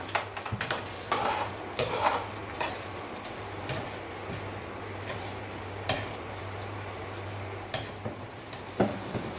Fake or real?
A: real